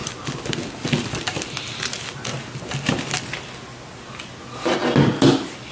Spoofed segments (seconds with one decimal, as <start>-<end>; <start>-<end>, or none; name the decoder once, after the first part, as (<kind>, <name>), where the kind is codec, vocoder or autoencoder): none